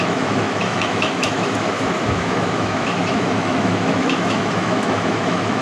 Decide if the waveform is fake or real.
fake